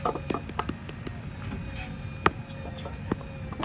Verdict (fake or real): real